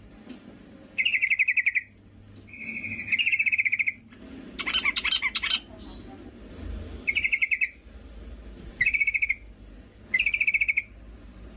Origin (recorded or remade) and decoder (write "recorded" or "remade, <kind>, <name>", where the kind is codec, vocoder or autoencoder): recorded